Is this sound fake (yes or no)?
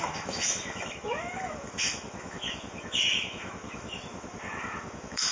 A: yes